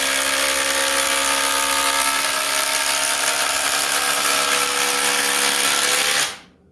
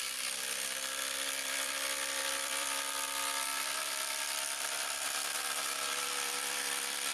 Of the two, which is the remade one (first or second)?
second